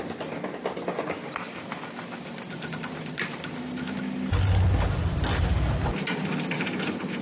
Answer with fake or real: real